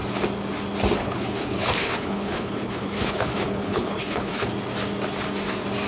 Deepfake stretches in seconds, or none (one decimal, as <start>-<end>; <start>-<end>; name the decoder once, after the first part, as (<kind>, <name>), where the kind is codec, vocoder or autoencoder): 1.0-4.5 (codec, HILCodec)